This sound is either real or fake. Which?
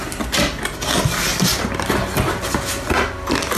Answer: real